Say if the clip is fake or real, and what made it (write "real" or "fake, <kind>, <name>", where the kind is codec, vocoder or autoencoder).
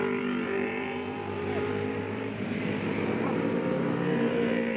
fake, vocoder, BigVGAN v2